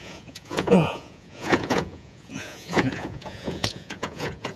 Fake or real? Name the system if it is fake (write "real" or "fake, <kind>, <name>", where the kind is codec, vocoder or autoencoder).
fake, vocoder, Vocos